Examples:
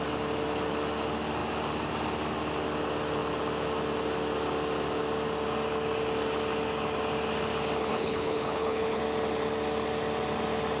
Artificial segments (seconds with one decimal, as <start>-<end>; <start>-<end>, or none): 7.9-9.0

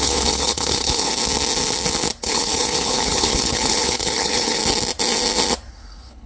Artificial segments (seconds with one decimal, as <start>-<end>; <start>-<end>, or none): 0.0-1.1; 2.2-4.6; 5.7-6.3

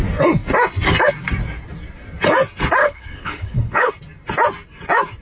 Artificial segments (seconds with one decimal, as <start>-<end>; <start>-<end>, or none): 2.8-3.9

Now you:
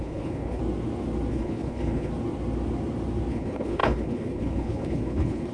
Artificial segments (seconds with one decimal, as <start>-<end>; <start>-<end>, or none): 0.0-0.6; 1.3-2.1; 3.3-5.5